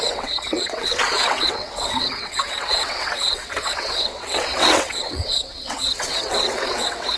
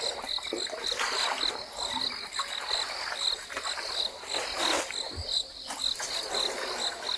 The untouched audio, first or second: second